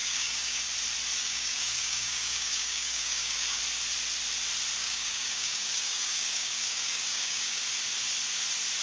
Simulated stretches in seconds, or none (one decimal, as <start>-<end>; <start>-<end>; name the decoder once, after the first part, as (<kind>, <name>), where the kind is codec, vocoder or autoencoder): 0.0-0.6 (codec, DAC); 1.2-3.6; 4.8-7.6